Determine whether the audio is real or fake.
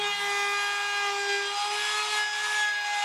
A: real